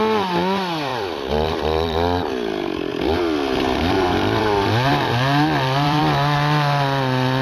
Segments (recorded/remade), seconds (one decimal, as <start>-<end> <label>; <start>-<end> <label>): 0.0-0.9 recorded; 0.9-2.3 remade; 2.3-2.9 recorded; 2.9-6.0 remade; 6.0-7.4 recorded